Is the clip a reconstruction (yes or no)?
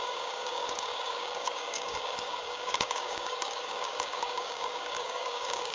yes